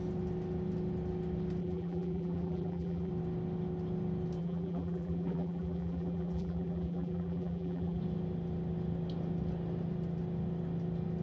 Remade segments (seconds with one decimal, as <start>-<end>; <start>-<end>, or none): 1.6-3.1; 4.4-8.0